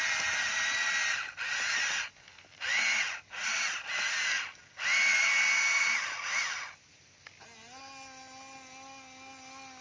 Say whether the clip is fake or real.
real